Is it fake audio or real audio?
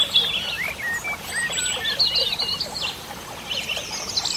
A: real